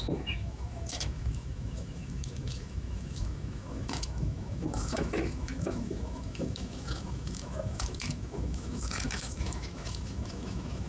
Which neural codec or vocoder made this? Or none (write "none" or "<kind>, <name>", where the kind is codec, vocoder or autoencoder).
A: autoencoder, DAC-VAE